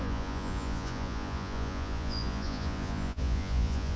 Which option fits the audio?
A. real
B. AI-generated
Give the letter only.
B